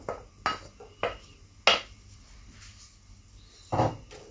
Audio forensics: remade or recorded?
recorded